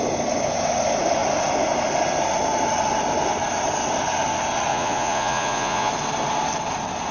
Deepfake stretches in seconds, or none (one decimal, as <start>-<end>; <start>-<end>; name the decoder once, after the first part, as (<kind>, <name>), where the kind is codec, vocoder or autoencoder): 4.7-5.9 (vocoder, Vocos)